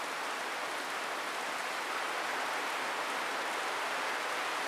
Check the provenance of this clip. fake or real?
real